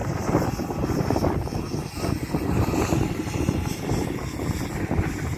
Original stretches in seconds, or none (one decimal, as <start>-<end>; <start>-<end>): 0.0-5.4